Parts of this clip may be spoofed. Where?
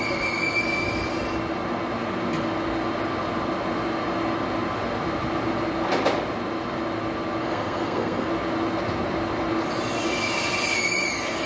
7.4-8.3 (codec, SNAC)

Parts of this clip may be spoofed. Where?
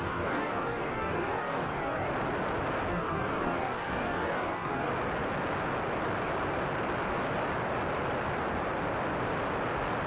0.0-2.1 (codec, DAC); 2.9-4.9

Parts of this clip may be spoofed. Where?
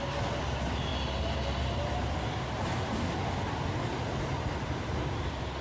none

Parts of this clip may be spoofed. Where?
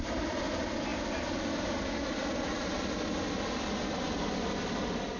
none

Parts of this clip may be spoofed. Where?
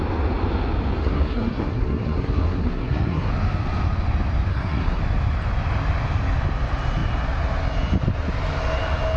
1.0-3.3 (codec, SNAC); 4.5-5.0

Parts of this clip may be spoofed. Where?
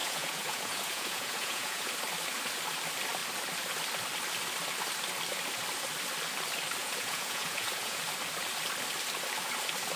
0.0-1.9 (vocoder, Vocos); 6.8-8.0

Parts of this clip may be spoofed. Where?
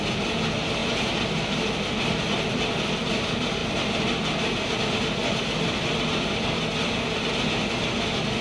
3.6-7.3 (vocoder, BigVGAN v2)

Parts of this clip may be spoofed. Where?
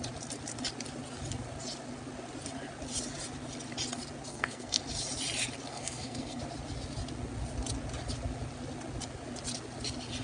4.3-4.8 (codec, SNAC); 5.7-6.4